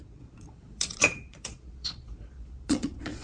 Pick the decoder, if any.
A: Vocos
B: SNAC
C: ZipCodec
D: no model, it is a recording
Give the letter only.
A